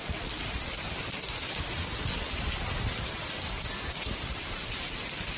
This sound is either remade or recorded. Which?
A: recorded